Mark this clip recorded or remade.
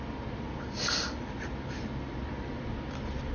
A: recorded